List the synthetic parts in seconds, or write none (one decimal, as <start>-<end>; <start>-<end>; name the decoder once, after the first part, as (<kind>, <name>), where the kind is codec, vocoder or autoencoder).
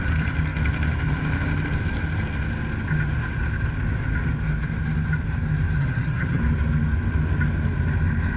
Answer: 5.8-6.4 (vocoder, HiFi-GAN)